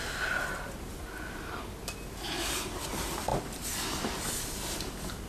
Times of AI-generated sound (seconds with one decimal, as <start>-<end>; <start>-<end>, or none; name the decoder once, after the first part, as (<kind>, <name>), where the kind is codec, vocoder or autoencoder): none